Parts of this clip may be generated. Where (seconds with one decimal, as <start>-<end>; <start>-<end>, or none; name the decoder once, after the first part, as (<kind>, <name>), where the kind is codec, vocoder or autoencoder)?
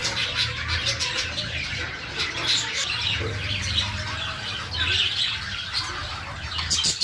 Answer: none